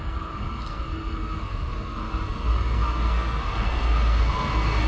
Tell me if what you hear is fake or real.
fake